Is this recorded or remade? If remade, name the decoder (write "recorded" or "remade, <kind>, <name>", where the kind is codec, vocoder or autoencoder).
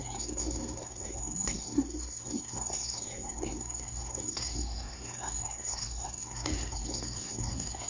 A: remade, codec, SNAC